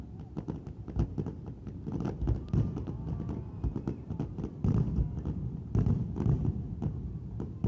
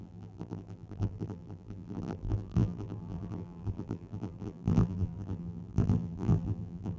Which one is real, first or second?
first